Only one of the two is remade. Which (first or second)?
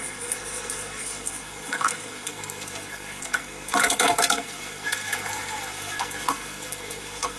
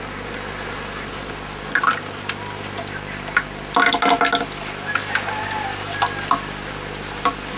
first